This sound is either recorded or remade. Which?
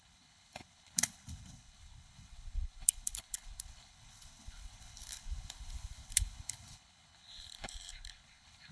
remade